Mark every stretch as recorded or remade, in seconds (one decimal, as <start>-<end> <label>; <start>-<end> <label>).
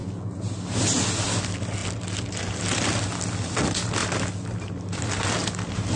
0.0-6.0 recorded